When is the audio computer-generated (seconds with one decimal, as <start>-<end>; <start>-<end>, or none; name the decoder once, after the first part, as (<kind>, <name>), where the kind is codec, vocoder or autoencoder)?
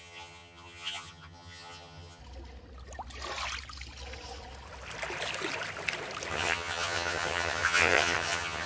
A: 0.0-2.2 (vocoder, HiFi-GAN); 6.3-8.7